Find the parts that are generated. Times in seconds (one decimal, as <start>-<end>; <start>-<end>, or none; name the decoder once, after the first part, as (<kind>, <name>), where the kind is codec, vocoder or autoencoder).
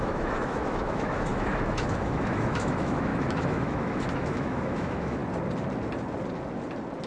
0.0-5.2 (autoencoder, DAC-VAE)